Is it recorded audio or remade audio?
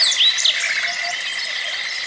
recorded